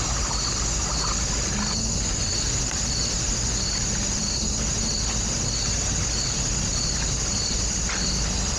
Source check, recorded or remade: recorded